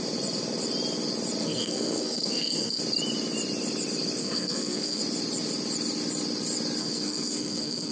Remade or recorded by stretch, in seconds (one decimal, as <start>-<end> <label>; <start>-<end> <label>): 0.0-1.4 recorded; 1.4-2.8 remade; 2.8-4.2 recorded; 4.2-5.0 remade; 5.0-6.8 recorded; 6.8-7.9 remade